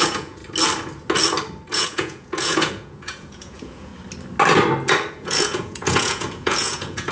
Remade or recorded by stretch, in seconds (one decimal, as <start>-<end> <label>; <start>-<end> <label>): 0.0-0.4 remade; 0.4-1.7 recorded; 1.7-3.9 remade; 3.9-5.1 recorded; 5.1-7.1 remade